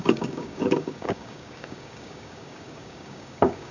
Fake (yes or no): yes